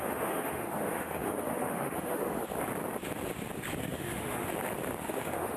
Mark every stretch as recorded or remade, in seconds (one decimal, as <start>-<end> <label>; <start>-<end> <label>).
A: 0.0-2.4 remade; 2.4-3.8 recorded; 3.8-4.5 remade; 4.5-5.0 recorded; 5.0-5.6 remade